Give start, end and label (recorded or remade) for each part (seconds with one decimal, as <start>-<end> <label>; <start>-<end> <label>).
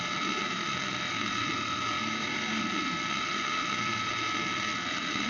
0.0-2.0 remade; 2.0-2.6 recorded; 2.6-5.3 remade